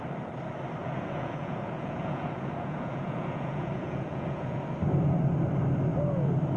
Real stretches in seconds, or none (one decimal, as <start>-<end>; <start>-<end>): 0.0-0.8; 4.7-6.6

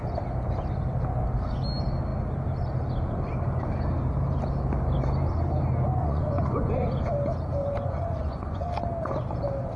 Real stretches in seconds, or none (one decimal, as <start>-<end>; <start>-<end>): 0.0-6.0; 6.7-7.6; 8.7-9.8

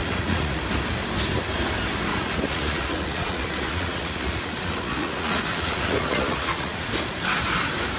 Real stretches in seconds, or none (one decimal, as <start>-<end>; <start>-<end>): 0.6-2.1; 6.9-8.0

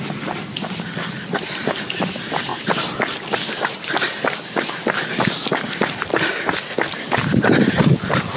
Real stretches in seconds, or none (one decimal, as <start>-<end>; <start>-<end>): 0.0-8.4

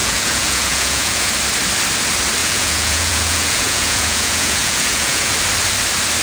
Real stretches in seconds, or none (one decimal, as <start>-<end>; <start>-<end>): 1.3-2.4; 5.3-6.2

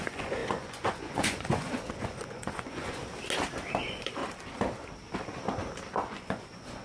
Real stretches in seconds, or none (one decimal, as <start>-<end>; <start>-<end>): 3.0-3.8; 4.2-5.9

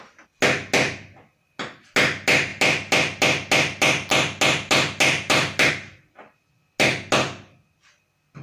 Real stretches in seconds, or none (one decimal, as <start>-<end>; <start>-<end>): 0.0-8.4

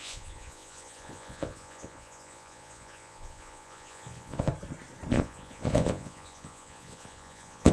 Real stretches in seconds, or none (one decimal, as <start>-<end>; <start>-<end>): 4.5-5.1